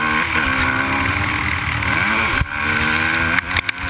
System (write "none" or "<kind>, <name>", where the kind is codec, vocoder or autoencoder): none